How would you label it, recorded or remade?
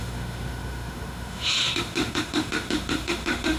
remade